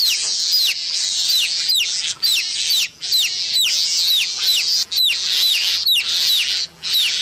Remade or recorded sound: remade